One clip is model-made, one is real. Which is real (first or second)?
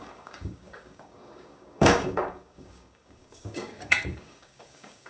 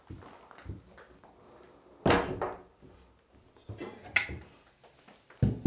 second